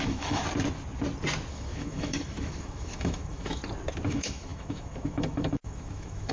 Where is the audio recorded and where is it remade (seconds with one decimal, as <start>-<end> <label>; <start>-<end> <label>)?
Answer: 0.0-0.4 remade; 0.4-1.5 recorded; 1.5-3.6 remade; 3.6-4.1 recorded; 4.1-6.3 remade